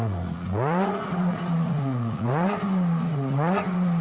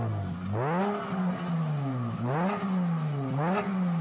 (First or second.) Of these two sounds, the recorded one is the second